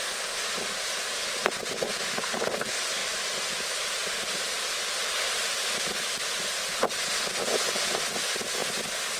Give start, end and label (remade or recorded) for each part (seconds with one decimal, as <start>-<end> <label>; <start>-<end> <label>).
0.0-1.3 remade; 1.3-3.0 recorded; 3.0-4.9 remade; 4.9-9.2 recorded

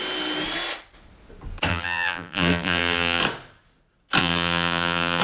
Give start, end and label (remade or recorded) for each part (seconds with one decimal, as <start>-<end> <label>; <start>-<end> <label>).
0.0-1.7 recorded; 1.7-3.2 remade; 3.2-4.2 recorded; 4.2-5.2 remade

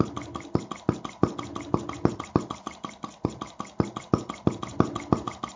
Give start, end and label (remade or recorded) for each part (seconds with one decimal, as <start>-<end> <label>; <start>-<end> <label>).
0.0-5.6 remade